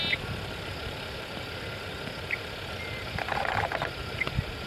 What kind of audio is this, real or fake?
real